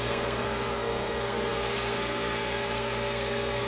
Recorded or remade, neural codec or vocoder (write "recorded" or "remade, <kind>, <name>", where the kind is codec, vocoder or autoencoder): remade, codec, SNAC